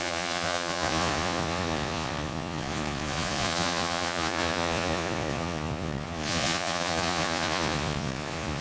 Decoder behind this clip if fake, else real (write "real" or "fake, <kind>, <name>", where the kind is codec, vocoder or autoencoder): fake, vocoder, Vocos